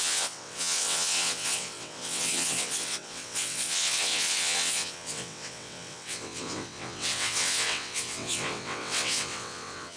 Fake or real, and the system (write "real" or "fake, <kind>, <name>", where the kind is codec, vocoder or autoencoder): fake, vocoder, WaveNeXt